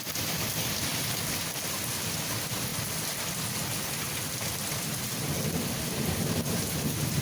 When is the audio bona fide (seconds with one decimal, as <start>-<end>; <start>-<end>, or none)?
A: 0.0-7.2